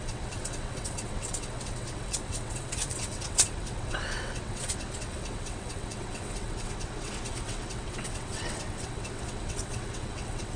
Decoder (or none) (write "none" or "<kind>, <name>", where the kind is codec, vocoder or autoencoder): vocoder, WaveNeXt